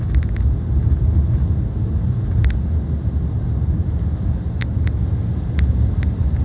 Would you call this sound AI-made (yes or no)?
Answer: no